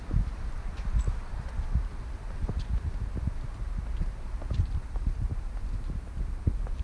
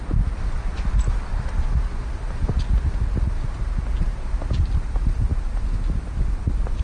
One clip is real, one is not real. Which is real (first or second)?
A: second